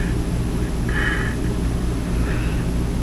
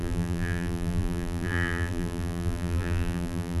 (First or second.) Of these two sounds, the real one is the first